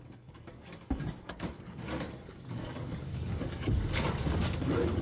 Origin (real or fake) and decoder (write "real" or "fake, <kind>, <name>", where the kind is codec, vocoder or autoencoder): fake, codec, DAC